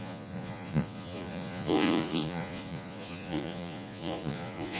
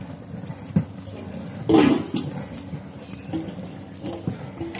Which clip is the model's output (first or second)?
first